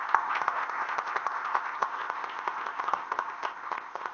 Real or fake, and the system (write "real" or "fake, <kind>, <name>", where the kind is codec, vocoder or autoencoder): fake, codec, ZipCodec